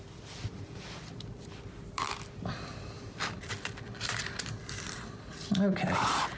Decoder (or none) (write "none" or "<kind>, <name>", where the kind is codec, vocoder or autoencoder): vocoder, BigVGAN v2